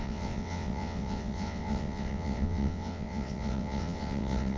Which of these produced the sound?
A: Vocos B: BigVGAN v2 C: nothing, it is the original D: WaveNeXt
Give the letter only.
D